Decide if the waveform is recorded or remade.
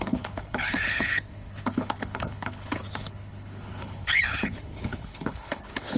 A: remade